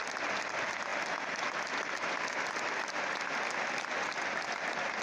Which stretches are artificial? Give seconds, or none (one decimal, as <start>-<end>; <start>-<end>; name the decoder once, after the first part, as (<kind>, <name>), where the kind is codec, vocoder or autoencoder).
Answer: none

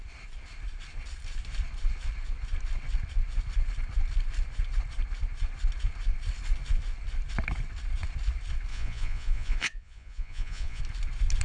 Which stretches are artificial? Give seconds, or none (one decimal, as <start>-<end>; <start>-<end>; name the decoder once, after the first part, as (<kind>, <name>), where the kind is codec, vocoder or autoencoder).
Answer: 8.7-10.8 (vocoder, Vocos)

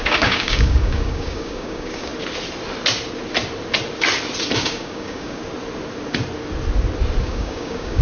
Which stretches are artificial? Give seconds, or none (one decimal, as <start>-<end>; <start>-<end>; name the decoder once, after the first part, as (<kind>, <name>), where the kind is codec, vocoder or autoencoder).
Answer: 0.0-2.1 (codec, DAC); 4.6-5.4; 7.2-8.0

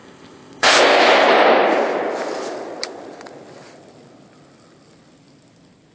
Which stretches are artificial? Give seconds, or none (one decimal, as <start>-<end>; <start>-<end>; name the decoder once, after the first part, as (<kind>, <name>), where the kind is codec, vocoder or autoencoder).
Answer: 0.0-1.0 (codec, ZipCodec)

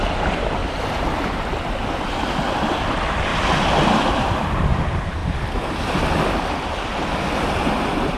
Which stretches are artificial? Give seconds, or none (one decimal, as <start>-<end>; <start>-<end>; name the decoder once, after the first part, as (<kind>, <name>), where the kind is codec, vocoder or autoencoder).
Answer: 0.0-0.6 (vocoder, BigVGAN v2); 2.7-3.3; 4.1-5.2